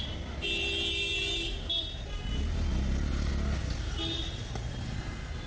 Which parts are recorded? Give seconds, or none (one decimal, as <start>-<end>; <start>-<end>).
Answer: 0.0-5.5